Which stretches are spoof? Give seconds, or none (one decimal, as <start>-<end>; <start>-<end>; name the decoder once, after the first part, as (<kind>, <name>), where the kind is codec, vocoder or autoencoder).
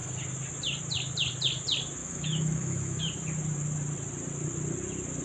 2.0-3.0 (autoencoder, DAC-VAE)